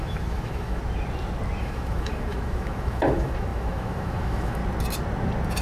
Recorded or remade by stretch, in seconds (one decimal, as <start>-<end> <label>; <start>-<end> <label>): 0.0-0.8 remade; 0.8-1.6 recorded; 1.6-4.6 remade; 4.6-5.6 recorded